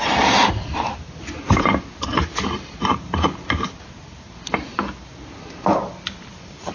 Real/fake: real